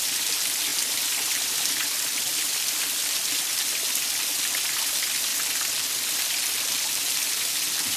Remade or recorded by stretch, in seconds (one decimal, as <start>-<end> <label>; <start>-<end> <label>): 0.0-0.7 recorded; 0.7-1.8 remade; 1.8-2.3 recorded; 2.3-4.1 remade; 4.1-8.0 recorded